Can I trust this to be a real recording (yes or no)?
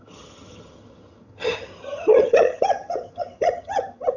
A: no